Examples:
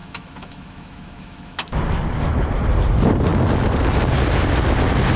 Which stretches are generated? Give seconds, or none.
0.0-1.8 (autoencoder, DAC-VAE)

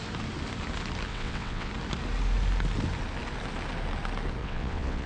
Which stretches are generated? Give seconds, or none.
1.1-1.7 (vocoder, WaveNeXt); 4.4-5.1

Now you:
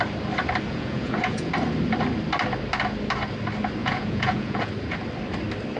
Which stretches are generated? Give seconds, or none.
0.7-1.5 (vocoder, Vocos); 3.8-4.7